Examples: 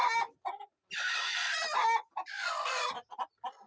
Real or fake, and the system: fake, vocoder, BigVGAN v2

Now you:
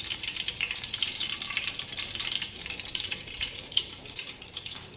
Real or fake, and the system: fake, vocoder, BigVGAN v2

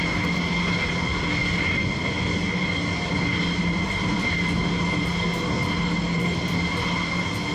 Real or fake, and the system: real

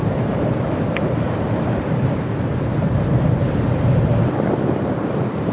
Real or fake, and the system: fake, vocoder, BigVGAN v2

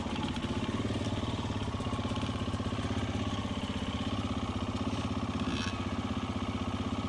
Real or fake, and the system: real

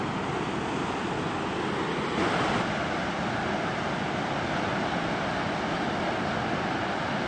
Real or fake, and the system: real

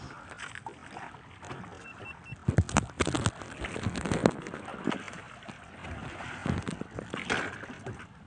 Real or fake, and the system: real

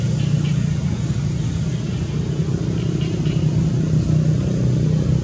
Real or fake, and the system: real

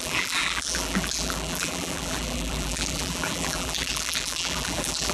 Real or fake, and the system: fake, vocoder, BigVGAN v2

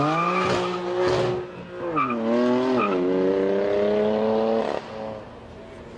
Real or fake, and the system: real